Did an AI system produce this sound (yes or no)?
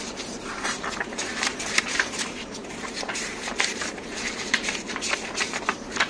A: yes